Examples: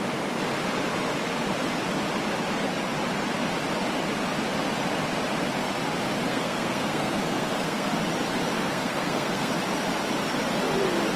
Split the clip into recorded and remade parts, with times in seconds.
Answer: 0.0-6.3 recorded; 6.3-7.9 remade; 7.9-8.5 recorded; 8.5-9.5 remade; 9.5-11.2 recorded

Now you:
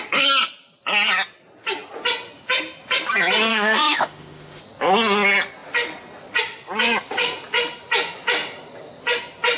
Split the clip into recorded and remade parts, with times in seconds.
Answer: 0.0-3.5 recorded; 3.5-4.6 remade; 4.6-9.6 recorded

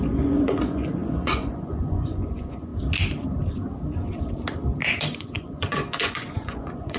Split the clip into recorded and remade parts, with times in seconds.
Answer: 0.0-2.7 remade; 2.7-5.0 recorded; 5.0-7.0 remade

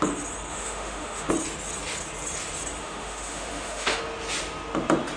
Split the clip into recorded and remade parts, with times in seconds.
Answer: 0.0-0.5 recorded; 0.5-1.3 remade; 1.3-2.8 recorded; 2.8-4.0 remade; 4.0-5.2 recorded

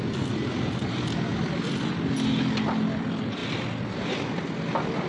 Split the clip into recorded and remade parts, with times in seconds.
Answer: 0.0-5.1 recorded

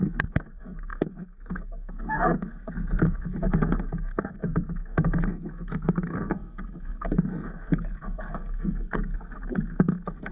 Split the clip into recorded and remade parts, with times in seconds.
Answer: 0.0-10.3 remade

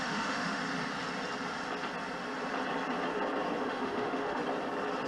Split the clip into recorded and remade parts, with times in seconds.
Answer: 0.0-0.6 remade; 0.6-3.6 recorded; 3.6-4.4 remade; 4.4-5.1 recorded

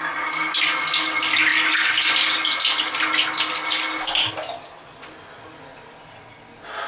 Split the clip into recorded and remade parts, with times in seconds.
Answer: 0.0-6.9 recorded